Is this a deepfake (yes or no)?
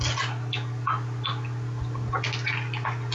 no